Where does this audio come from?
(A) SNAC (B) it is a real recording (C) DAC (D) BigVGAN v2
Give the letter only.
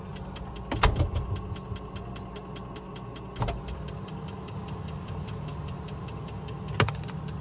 B